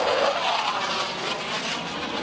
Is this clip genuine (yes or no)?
yes